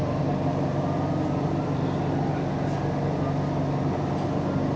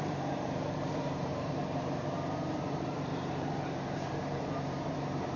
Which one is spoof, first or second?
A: second